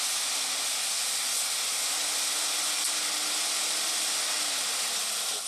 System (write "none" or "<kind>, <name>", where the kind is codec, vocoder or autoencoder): none